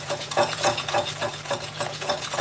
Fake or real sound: fake